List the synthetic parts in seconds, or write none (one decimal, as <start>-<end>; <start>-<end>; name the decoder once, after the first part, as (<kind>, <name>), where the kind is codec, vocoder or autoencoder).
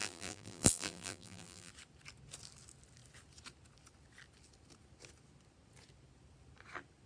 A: 0.0-1.7 (vocoder, BigVGAN v2)